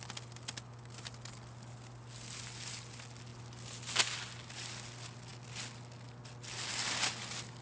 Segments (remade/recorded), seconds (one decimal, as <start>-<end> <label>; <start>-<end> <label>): 0.0-7.6 recorded